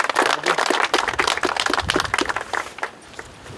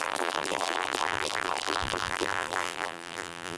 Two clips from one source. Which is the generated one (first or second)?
second